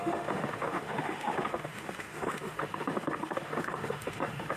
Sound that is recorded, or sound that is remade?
remade